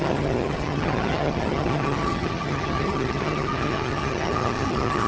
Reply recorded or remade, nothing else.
remade